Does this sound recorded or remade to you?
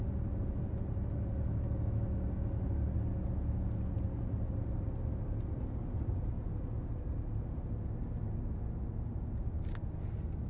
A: recorded